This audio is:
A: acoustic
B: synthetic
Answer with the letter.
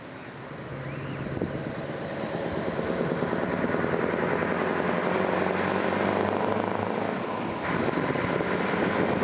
A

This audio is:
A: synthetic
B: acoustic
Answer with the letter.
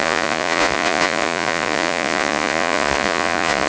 A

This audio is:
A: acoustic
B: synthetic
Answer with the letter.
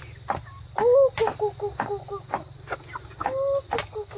A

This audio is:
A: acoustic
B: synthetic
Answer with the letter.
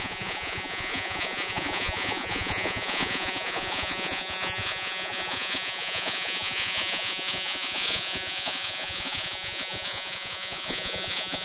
B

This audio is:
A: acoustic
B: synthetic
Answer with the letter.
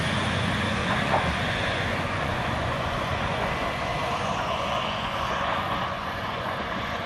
B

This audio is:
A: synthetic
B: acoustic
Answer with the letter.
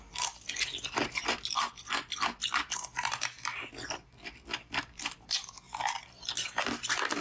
B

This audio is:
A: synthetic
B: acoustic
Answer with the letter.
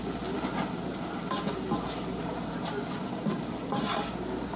B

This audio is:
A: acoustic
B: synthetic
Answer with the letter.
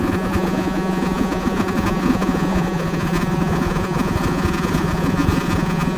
B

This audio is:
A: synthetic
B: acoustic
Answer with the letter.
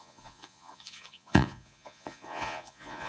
A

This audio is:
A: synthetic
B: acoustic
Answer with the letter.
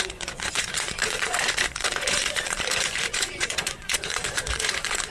A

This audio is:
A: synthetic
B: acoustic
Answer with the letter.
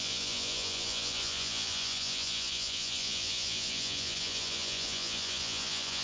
A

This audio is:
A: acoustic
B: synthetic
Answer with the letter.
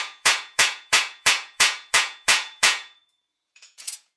B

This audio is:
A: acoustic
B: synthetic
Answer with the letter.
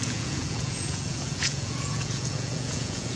B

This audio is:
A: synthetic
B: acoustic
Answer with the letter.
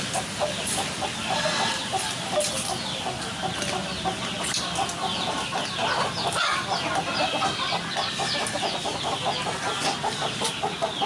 B